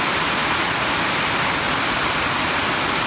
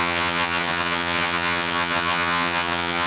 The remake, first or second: second